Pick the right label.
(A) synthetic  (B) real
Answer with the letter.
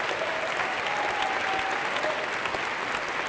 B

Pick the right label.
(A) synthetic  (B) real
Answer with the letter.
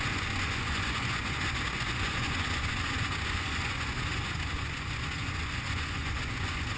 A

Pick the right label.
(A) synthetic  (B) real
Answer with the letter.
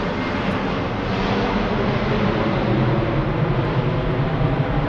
B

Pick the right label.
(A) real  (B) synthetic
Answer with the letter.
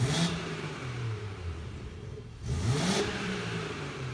B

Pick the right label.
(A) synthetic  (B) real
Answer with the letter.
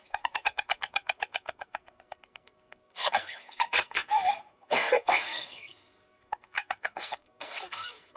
A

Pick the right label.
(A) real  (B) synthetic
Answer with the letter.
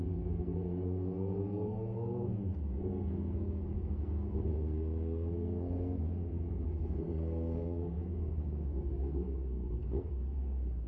B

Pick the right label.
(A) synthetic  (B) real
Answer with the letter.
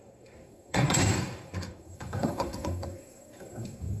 A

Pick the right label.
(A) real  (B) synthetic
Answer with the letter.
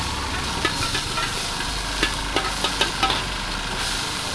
A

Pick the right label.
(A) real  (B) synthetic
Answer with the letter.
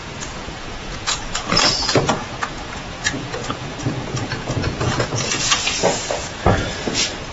B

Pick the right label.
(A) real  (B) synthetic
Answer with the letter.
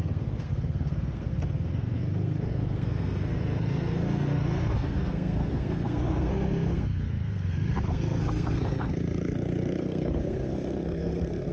B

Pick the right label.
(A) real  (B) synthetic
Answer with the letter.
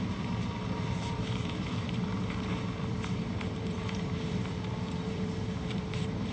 B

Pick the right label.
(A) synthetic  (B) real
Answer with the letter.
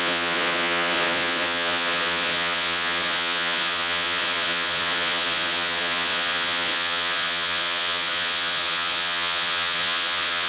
A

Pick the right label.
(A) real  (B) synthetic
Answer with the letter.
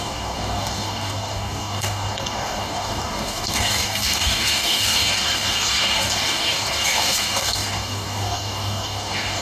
B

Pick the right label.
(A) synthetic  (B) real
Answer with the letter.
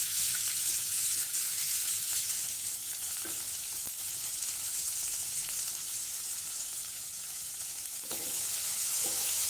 A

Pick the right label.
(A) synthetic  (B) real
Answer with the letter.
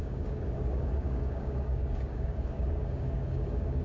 A